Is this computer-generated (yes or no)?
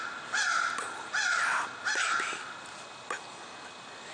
no